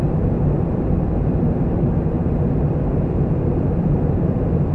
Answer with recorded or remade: remade